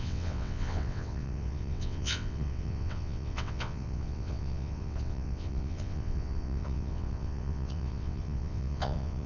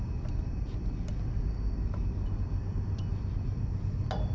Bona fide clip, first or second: second